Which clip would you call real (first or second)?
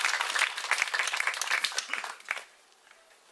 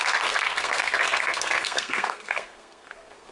first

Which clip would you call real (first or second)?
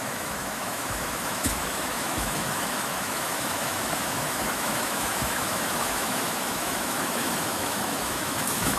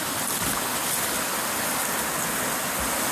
second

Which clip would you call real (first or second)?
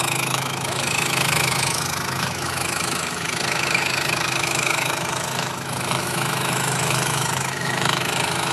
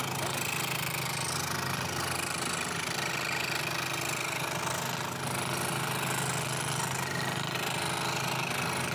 second